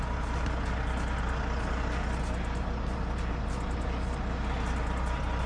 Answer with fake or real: real